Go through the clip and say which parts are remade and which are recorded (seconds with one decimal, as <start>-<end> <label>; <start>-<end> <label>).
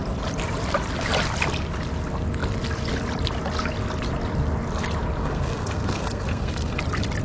0.0-5.2 recorded; 5.2-6.8 remade; 6.8-7.2 recorded